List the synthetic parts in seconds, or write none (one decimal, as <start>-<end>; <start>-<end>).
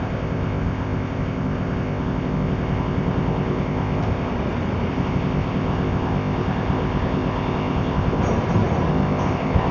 0.0-4.3; 4.9-8.2; 8.9-9.7